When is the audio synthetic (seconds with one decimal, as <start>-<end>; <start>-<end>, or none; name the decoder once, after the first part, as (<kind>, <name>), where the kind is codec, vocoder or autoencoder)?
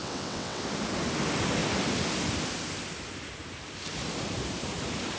0.0-0.6 (vocoder, WaveNeXt)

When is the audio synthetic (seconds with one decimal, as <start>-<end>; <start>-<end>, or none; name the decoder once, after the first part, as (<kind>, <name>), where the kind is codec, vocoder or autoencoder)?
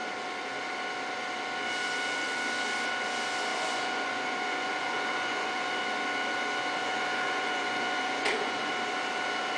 3.5-5.7 (vocoder, Vocos); 6.8-8.7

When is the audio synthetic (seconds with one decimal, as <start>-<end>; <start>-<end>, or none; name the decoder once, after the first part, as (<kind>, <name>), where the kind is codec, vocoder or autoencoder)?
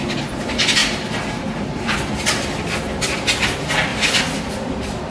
0.8-3.2 (vocoder, BigVGAN v2); 3.9-4.5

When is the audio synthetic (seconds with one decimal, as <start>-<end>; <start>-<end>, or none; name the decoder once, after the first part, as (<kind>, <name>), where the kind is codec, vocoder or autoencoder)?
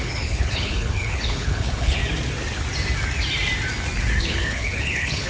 0.0-2.0 (codec, HILCodec); 4.2-5.3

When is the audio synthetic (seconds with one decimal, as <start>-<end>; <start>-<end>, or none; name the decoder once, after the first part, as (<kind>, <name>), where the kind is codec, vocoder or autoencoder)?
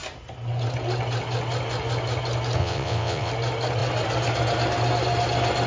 2.6-3.3 (vocoder, WaveNeXt)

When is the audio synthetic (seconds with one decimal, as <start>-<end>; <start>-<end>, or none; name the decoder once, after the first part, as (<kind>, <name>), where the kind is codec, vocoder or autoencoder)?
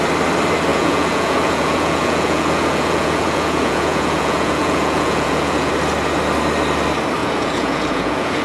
0.7-5.7 (vocoder, Vocos); 7.2-8.4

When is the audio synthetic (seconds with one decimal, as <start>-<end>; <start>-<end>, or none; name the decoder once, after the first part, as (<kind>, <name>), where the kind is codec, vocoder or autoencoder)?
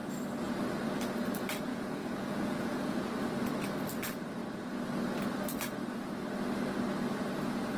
1.7-3.0 (vocoder, Vocos)